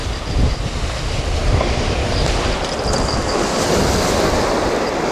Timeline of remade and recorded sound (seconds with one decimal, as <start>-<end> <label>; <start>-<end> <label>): 0.0-3.1 remade; 3.1-5.1 recorded